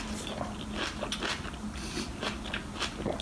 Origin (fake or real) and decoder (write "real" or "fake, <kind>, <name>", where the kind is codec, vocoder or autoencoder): real